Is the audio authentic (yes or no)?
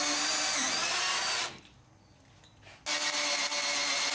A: yes